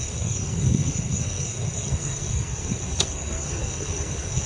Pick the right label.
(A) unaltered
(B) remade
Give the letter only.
B